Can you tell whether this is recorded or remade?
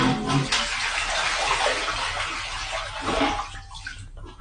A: recorded